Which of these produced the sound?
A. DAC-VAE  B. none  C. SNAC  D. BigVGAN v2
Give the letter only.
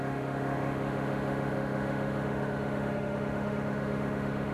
A